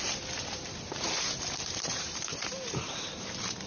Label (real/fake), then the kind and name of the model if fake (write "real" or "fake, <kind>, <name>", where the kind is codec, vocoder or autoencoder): fake, vocoder, BigVGAN v2